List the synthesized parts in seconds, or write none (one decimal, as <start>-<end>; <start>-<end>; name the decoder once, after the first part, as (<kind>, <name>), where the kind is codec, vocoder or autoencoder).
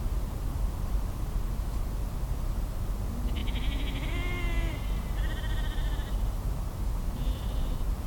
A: none